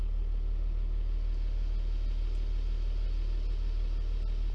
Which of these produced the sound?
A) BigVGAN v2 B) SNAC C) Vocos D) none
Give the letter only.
D